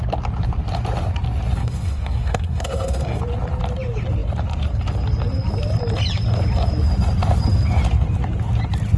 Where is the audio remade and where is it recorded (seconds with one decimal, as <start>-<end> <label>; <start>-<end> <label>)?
0.0-1.6 recorded; 1.6-3.2 remade; 3.2-9.0 recorded